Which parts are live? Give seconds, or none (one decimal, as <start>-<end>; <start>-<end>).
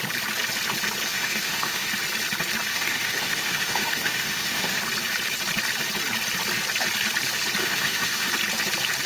0.0-1.1; 1.9-2.7; 4.8-7.6; 8.3-9.1